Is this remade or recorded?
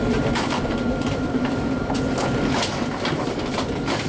remade